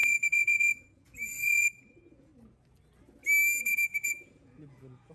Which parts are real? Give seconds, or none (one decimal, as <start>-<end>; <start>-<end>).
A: 2.3-3.6